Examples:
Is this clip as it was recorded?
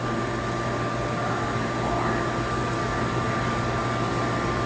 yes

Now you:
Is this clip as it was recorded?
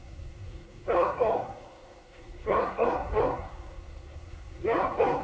no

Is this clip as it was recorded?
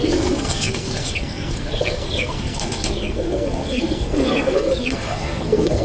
no